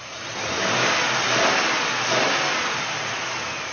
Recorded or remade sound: recorded